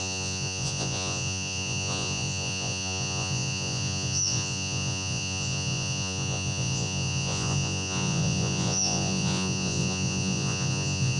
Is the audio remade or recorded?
remade